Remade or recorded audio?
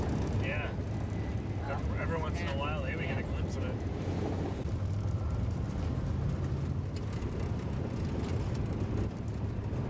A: recorded